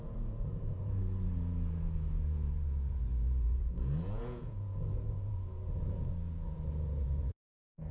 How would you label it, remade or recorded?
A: remade